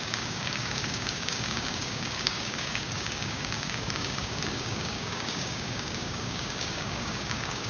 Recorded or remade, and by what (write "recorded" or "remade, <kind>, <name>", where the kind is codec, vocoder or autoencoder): remade, codec, DAC